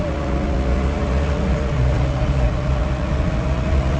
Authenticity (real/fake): fake